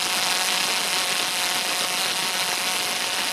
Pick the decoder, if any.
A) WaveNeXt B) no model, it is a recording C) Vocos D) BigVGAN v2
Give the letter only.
B